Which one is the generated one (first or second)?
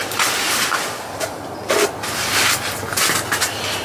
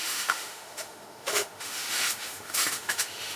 second